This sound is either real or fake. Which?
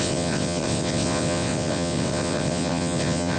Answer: fake